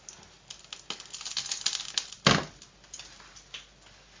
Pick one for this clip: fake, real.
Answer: real